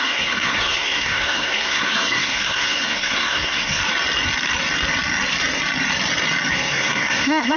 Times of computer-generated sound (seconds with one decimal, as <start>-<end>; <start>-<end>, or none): 0.0-3.8; 6.5-7.6